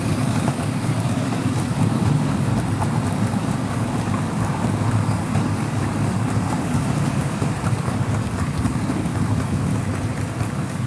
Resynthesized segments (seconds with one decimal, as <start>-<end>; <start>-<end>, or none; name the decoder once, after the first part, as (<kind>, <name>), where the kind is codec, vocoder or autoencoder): 0.0-2.5 (codec, DAC); 3.1-9.7; 10.4-10.9

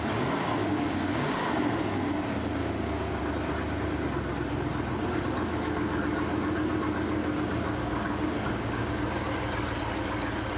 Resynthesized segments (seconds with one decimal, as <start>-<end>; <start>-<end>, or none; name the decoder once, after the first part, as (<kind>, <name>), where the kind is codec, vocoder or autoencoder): 0.6-1.5 (codec, DAC); 2.6-3.2; 7.2-8.9

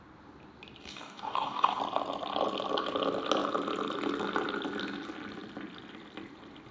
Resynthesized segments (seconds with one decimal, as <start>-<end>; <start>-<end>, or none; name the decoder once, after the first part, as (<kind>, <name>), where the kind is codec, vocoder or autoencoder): 0.8-1.8 (codec, DAC)

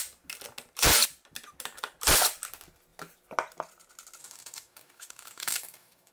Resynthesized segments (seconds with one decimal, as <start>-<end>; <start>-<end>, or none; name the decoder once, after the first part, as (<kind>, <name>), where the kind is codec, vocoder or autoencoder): 4.2-6.1 (codec, DAC)